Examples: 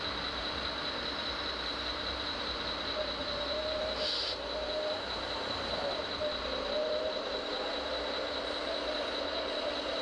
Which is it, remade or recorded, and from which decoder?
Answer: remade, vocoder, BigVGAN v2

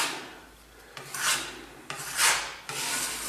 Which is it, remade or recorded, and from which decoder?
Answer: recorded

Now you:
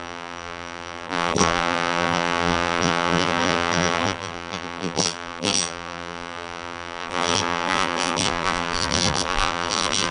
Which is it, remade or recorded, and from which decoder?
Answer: remade, vocoder, BigVGAN v2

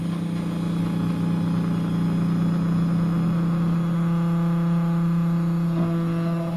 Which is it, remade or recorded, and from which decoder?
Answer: recorded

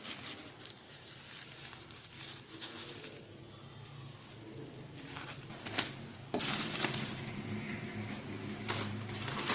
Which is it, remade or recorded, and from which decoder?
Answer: remade, vocoder, BigVGAN v2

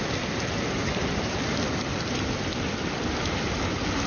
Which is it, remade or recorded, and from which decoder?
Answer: remade, vocoder, BigVGAN v2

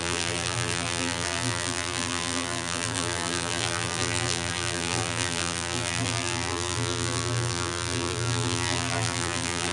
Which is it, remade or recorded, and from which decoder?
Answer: remade, vocoder, BigVGAN v2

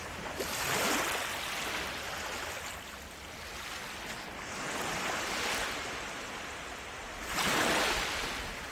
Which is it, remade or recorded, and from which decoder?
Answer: recorded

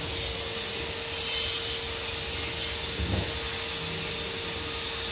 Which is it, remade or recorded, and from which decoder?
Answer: recorded